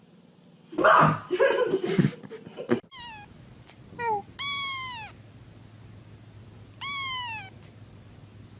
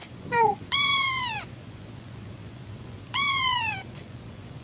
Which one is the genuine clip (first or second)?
first